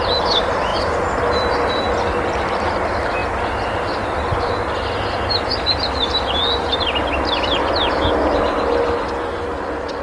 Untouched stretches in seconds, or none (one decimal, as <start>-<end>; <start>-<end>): 0.0-10.0